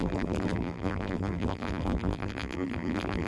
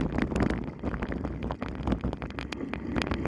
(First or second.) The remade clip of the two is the first